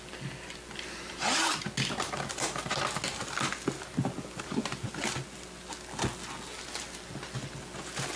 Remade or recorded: recorded